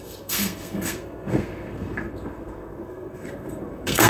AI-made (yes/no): yes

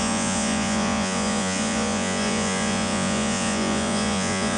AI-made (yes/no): yes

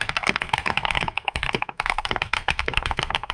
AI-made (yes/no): yes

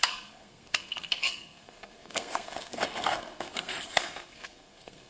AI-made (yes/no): yes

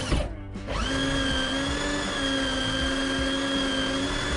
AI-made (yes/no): no